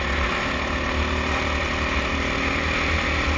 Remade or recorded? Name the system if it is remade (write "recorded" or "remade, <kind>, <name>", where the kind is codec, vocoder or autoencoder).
recorded